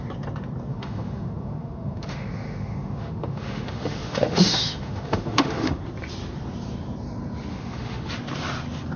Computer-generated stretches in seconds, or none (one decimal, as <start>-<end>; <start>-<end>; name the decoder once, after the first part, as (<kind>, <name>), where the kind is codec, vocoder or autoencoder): 0.7-5.8 (autoencoder, DAC-VAE); 7.5-8.1